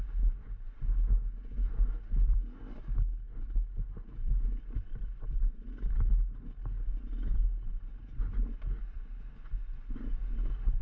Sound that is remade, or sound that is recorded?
recorded